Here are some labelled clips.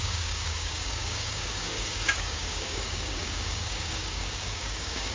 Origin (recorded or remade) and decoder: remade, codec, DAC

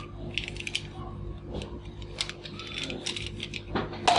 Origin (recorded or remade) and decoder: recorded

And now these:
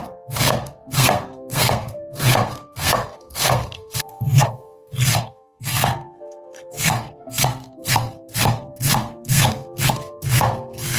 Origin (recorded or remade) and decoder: remade, codec, SNAC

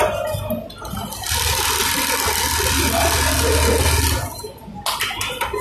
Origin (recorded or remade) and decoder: recorded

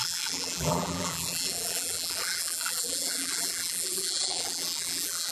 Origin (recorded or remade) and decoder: remade, vocoder, BigVGAN v2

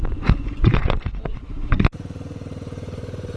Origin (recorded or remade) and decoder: remade, vocoder, Vocos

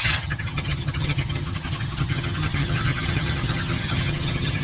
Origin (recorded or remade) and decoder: remade, vocoder, HiFi-GAN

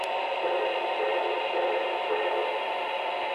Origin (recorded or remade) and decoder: recorded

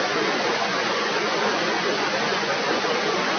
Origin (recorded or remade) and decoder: remade, vocoder, Vocos